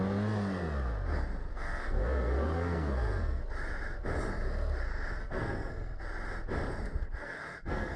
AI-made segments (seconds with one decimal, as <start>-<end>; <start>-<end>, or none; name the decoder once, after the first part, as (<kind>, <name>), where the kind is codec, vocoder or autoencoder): 1.5-3.4 (codec, SNAC); 5.2-6.0; 7.2-8.0